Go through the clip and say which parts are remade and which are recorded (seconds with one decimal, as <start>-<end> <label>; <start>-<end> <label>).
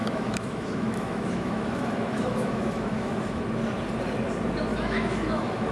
0.0-3.4 remade; 3.4-4.7 recorded; 4.7-5.7 remade